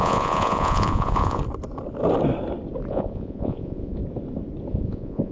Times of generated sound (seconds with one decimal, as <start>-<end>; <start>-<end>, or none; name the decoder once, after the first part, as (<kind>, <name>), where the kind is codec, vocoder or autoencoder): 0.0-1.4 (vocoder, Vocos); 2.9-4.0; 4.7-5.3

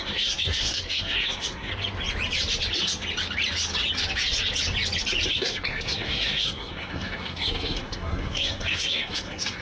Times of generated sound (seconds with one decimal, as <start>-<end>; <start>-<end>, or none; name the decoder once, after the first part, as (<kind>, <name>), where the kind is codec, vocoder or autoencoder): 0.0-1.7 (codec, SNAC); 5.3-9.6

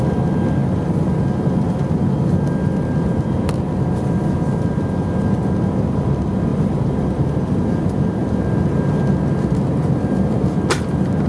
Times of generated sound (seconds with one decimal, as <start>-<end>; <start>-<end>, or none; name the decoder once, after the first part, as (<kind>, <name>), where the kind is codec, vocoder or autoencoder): none

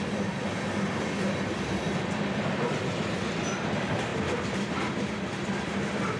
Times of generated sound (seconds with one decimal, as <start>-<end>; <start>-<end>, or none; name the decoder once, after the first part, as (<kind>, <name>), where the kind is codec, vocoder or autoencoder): 4.1-6.2 (vocoder, BigVGAN v2)

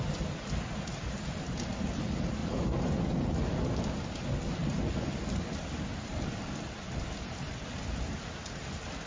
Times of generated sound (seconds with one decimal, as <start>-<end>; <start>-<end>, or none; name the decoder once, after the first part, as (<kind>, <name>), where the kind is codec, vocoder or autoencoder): none